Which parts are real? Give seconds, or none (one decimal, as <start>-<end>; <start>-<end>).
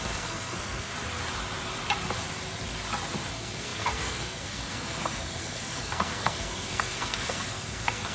0.9-3.3